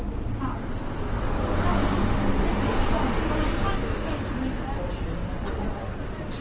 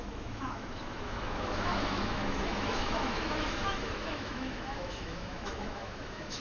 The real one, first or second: first